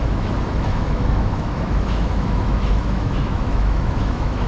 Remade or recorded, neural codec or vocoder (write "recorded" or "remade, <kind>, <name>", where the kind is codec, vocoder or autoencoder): remade, autoencoder, DAC-VAE